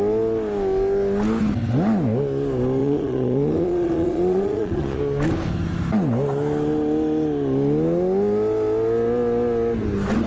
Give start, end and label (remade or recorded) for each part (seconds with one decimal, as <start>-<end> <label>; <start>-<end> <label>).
0.0-2.8 recorded; 2.8-5.0 remade; 5.0-10.3 recorded